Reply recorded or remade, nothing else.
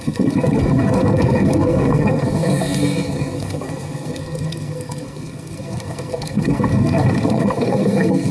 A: remade